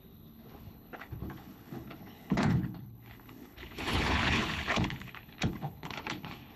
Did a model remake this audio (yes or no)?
yes